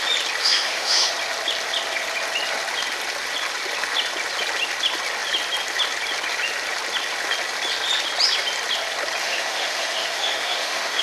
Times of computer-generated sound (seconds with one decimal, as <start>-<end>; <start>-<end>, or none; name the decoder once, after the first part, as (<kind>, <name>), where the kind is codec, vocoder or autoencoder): 0.4-1.1 (autoencoder, DAC-VAE); 9.2-11.0